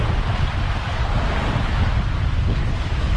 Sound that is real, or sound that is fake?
real